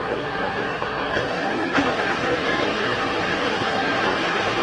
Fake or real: fake